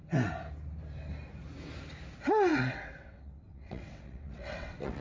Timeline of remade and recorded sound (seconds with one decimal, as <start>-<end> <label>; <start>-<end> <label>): 0.0-2.5 recorded; 2.5-5.0 remade